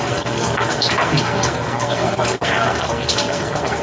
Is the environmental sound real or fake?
fake